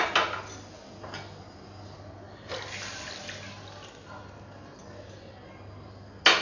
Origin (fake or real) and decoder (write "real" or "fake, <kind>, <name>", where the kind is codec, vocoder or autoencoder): real